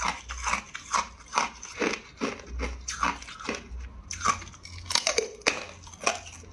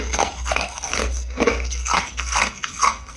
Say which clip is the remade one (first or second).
second